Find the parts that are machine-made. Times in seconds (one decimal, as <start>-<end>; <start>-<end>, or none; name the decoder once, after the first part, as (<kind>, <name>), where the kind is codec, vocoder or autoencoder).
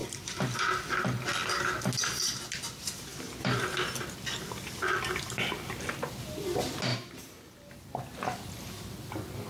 0.0-0.8 (vocoder, BigVGAN v2); 6.9-7.7